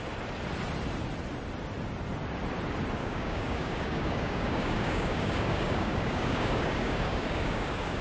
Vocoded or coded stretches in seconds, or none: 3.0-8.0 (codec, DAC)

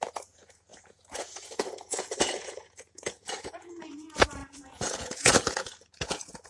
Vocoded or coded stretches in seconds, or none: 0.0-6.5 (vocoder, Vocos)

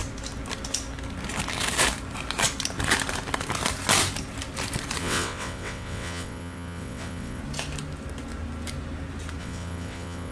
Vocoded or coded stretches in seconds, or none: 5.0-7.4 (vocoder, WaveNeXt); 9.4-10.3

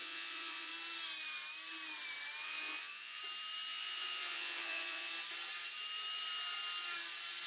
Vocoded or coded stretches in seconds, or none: 0.0-0.7 (vocoder, Vocos); 2.4-3.2; 3.7-5.1